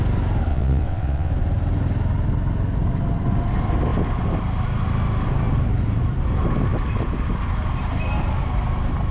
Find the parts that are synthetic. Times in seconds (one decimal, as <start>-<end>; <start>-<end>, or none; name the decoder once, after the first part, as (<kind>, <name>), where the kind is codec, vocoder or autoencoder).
0.5-1.3 (vocoder, WaveNeXt)